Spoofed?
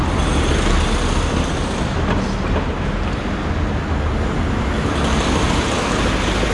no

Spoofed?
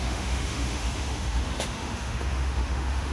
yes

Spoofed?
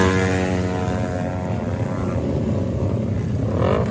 no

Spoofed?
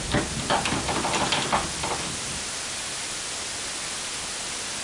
no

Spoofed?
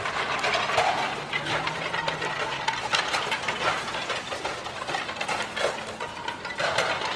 no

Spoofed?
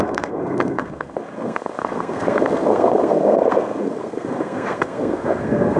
yes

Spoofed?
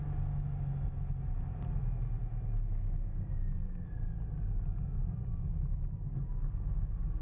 no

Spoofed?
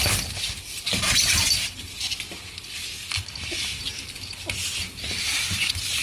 no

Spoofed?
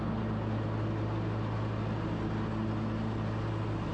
no